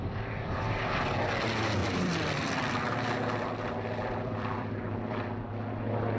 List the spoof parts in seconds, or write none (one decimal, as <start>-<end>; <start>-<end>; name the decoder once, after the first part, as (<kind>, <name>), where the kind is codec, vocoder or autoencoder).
1.8-5.5 (vocoder, BigVGAN v2)